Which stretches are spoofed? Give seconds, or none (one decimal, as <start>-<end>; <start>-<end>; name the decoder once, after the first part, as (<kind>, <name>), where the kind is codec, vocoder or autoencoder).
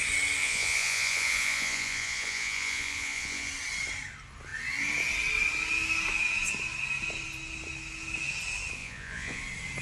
0.4-3.5 (vocoder, Vocos); 8.8-9.4